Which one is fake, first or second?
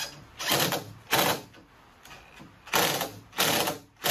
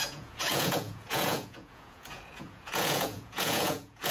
second